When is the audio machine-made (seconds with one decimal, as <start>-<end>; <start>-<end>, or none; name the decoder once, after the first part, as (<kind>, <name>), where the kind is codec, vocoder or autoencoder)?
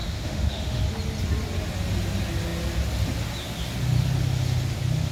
0.0-0.8 (autoencoder, DAC-VAE)